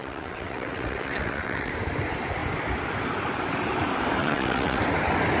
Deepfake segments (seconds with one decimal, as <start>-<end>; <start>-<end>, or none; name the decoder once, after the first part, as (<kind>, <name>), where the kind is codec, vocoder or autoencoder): 0.0-1.7 (vocoder, WaveNeXt); 4.2-4.8